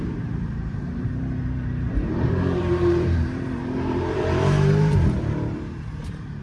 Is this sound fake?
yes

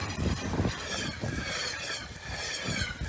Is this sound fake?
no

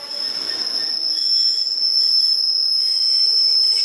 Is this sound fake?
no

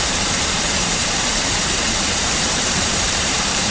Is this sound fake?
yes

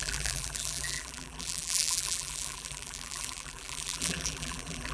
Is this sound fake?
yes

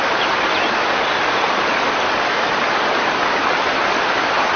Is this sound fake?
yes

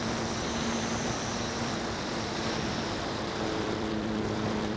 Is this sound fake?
yes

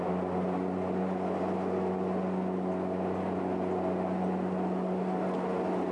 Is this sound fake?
no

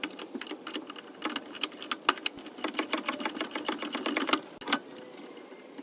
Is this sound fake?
no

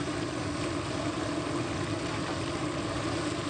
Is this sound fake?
no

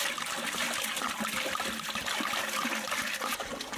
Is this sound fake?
no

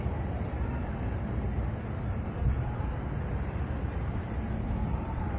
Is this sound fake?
yes